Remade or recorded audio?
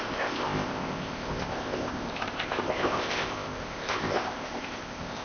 remade